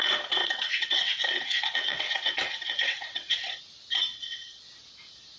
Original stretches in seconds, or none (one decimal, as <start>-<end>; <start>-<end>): 0.0-0.4; 3.6-4.1; 4.6-5.4